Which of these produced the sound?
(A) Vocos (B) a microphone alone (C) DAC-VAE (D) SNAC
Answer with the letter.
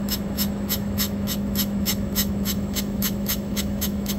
C